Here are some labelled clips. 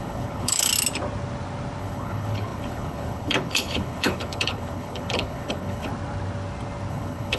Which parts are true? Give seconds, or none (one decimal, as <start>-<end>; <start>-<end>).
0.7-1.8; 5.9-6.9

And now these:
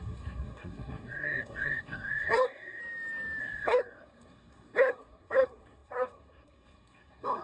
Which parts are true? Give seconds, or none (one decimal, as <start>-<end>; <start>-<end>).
2.8-3.4

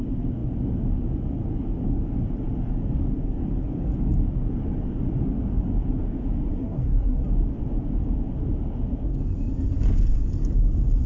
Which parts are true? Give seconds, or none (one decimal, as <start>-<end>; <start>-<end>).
0.0-6.5; 7.3-11.1

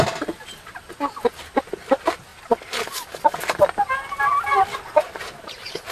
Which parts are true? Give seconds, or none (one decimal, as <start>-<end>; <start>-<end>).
0.0-5.9

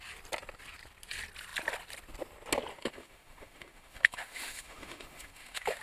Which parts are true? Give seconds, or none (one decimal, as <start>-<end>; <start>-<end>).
0.0-2.7

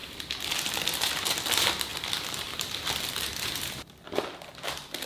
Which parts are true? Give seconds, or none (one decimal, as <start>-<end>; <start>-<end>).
1.5-1.9